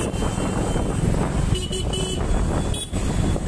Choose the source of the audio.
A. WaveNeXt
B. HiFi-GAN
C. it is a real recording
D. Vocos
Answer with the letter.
C